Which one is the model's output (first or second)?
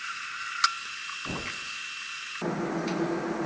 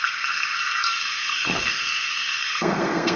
second